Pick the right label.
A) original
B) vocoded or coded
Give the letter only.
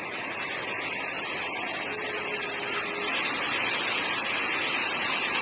A